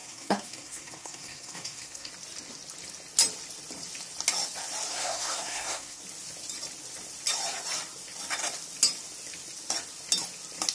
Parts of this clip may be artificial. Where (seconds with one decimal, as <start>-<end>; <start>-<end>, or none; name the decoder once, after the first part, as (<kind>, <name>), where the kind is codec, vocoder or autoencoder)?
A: 0.0-2.1 (codec, SNAC); 4.9-6.0